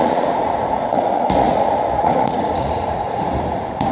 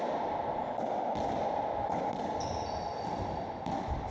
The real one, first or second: second